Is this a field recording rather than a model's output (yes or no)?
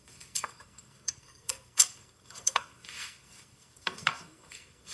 no